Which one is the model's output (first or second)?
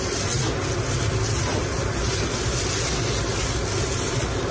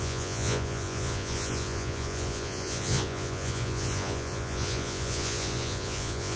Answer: second